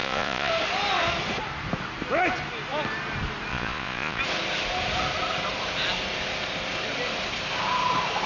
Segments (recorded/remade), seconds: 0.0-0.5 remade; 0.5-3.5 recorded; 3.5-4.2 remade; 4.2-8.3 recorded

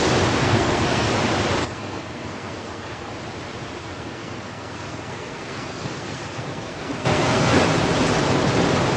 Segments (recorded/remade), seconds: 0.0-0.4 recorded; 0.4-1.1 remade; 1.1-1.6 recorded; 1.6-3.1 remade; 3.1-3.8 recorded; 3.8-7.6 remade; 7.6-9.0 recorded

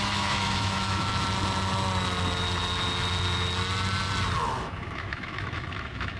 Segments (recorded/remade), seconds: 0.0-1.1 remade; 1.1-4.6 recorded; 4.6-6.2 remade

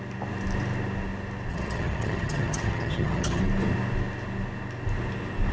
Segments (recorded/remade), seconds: 0.0-1.5 recorded; 1.5-3.4 remade; 3.4-5.5 recorded

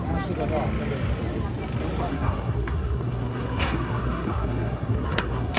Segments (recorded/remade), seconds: 0.0-2.1 recorded; 2.1-5.6 remade

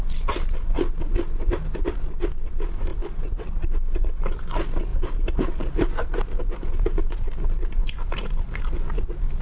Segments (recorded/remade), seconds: 0.0-4.9 recorded; 4.9-8.6 remade; 8.6-9.4 recorded